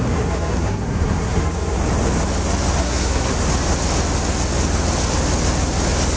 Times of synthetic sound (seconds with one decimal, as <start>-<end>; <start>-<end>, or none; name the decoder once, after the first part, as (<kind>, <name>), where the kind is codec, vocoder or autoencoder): 0.0-1.8 (codec, SNAC); 2.8-3.3